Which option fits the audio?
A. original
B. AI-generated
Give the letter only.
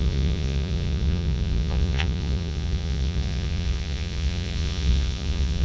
B